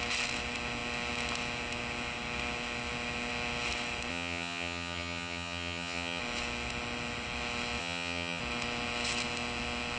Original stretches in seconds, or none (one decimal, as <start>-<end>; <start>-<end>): 0.0-4.1; 6.2-7.8; 8.4-10.0